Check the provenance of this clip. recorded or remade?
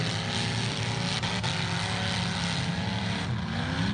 recorded